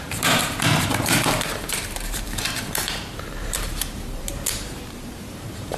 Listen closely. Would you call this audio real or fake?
fake